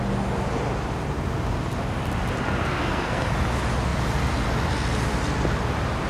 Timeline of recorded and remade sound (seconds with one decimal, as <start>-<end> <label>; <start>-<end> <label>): 0.0-2.6 recorded; 2.6-3.3 remade; 3.3-6.1 recorded